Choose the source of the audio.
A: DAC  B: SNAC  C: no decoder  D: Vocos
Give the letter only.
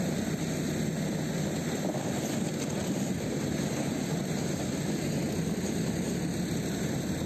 C